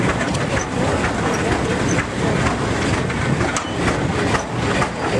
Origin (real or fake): real